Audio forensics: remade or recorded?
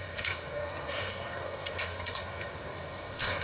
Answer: remade